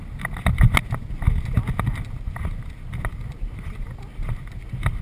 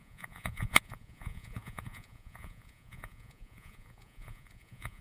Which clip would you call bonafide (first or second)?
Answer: first